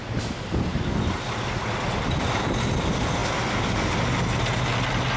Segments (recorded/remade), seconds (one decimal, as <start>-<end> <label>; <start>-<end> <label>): 0.0-5.2 recorded